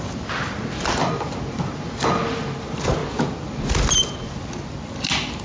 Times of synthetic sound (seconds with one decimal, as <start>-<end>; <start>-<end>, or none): none